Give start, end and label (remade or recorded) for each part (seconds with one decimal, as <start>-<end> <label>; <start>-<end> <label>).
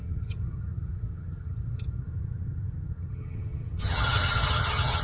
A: 0.0-5.0 remade